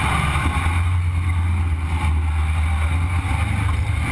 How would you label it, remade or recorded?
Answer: recorded